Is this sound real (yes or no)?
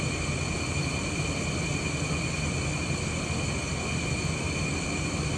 yes